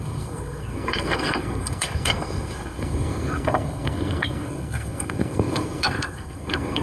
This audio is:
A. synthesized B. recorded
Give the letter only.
A